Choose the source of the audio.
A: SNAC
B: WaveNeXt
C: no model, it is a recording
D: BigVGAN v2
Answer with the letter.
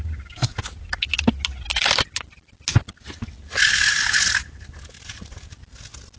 C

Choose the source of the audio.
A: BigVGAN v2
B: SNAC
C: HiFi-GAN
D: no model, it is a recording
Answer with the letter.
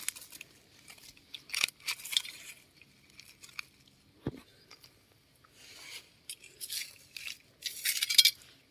D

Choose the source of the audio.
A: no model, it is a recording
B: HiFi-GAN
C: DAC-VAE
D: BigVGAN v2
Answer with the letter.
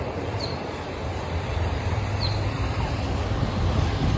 D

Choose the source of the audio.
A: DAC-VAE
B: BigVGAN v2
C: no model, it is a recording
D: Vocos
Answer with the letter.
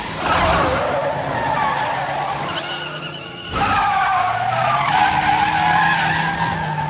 C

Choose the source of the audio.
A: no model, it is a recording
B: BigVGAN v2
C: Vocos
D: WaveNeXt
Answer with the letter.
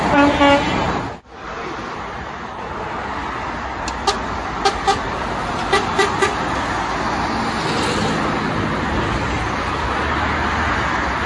A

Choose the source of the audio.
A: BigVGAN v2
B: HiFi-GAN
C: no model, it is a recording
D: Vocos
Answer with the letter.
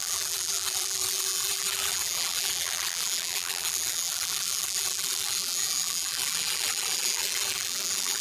A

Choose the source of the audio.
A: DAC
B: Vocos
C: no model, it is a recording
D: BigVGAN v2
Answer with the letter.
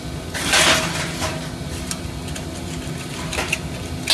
C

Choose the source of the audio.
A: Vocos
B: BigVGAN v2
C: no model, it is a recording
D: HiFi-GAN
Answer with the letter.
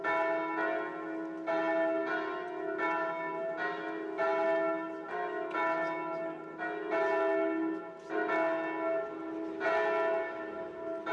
C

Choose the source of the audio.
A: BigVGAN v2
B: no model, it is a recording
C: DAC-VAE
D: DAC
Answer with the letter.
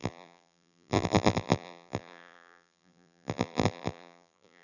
A